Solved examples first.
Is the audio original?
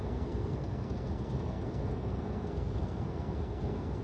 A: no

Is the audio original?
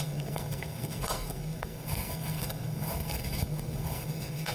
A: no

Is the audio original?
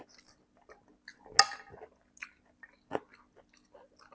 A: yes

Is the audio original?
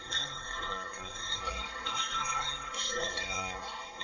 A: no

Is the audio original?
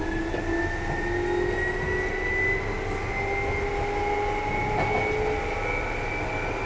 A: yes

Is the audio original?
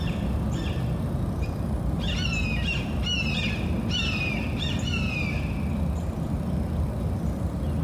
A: yes